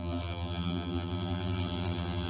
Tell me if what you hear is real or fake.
fake